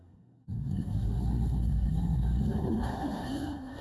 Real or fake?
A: fake